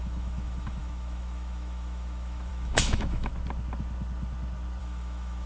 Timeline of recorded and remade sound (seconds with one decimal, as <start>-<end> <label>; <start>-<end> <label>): 0.0-3.3 remade; 3.3-4.8 recorded; 4.8-5.5 remade